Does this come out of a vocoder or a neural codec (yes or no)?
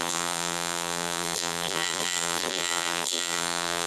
yes